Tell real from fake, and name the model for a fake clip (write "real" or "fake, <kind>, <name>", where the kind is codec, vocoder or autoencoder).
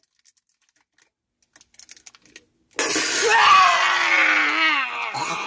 real